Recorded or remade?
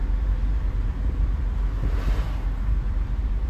remade